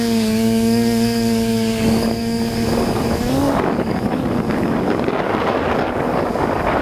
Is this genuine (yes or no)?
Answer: no